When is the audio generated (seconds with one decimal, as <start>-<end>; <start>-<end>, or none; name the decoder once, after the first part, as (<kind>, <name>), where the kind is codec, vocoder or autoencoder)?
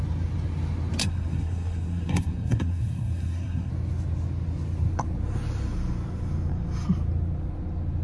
1.0-3.7 (codec, SNAC)